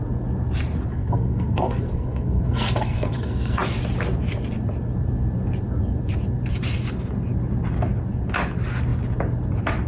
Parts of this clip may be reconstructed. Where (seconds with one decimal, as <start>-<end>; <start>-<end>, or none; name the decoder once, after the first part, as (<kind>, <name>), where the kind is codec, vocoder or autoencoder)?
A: 0.9-3.6 (codec, SNAC)